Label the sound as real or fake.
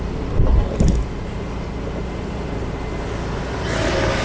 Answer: real